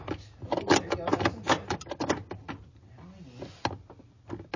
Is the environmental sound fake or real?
real